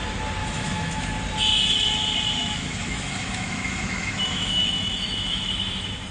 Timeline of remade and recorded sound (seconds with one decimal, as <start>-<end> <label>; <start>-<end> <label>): 0.0-0.4 recorded; 0.4-1.0 remade; 1.0-2.4 recorded; 2.4-5.5 remade; 5.5-6.1 recorded